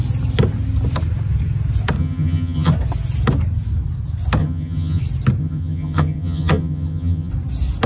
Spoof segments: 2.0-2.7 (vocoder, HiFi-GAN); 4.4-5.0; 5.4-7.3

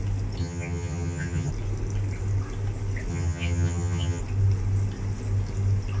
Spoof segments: 0.4-1.5 (vocoder, HiFi-GAN); 3.1-4.2

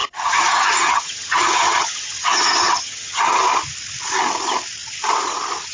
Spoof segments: 0.0-3.4 (vocoder, HiFi-GAN)

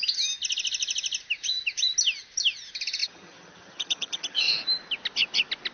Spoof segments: 3.0-4.5 (vocoder, HiFi-GAN)

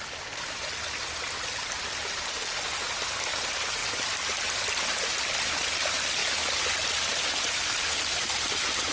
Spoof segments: none

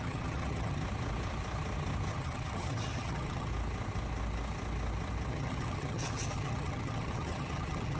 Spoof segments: 0.0-0.8 (vocoder, HiFi-GAN); 2.1-3.5; 5.3-8.0

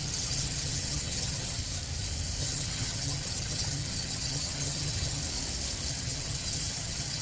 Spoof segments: 0.0-1.6 (vocoder, HiFi-GAN); 2.4-5.2; 5.9-7.2

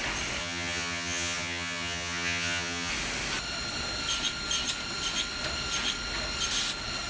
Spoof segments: 0.4-2.9 (vocoder, HiFi-GAN)